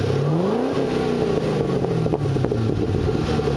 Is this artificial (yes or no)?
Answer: no